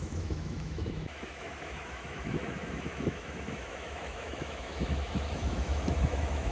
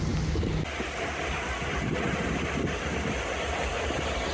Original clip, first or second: second